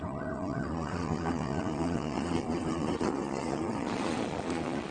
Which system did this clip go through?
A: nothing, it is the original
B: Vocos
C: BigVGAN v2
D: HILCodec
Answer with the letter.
B